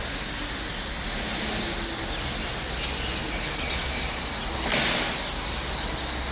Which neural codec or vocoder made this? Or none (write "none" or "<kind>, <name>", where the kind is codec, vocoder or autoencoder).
none